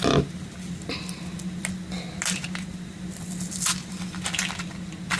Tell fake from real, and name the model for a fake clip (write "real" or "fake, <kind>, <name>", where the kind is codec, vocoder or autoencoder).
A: real